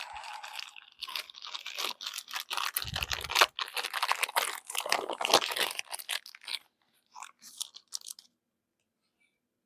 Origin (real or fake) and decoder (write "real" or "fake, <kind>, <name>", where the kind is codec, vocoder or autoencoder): real